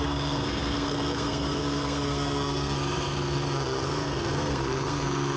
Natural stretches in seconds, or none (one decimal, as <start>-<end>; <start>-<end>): none